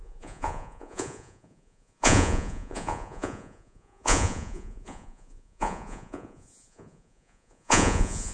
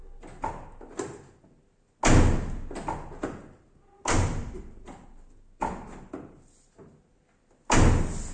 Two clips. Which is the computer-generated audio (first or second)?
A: first